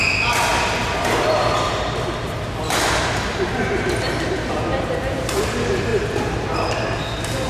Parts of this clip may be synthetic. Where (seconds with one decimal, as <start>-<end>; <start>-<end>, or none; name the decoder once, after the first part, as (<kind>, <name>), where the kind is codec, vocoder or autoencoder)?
none

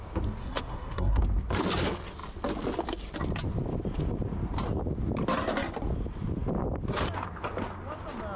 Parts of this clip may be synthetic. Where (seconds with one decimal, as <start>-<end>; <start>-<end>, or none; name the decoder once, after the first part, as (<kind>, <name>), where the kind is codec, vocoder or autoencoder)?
0.4-1.2 (codec, SNAC)